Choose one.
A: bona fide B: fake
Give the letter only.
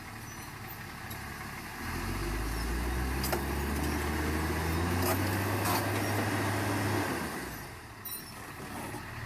A